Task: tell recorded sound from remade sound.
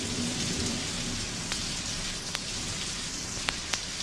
remade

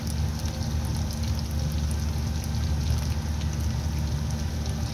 recorded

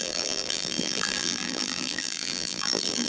remade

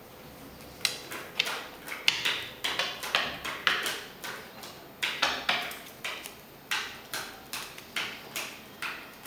recorded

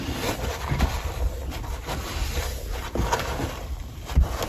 remade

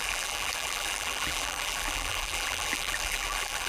remade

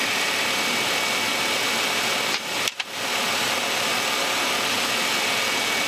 recorded